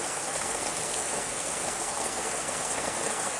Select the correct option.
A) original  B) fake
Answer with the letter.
B